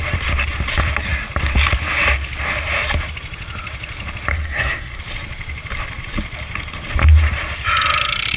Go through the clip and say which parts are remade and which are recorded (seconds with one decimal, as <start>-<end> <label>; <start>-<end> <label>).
0.0-4.3 recorded; 4.3-5.0 remade; 5.0-8.4 recorded